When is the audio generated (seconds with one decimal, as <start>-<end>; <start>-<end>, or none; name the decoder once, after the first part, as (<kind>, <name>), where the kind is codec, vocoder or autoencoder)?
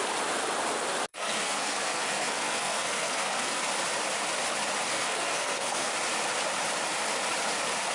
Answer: 1.1-3.6 (codec, SNAC); 4.9-5.9